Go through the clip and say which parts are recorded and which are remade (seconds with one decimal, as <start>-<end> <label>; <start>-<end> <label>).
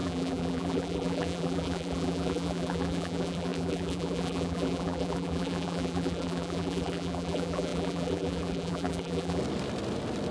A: 0.0-9.4 remade; 9.4-10.3 recorded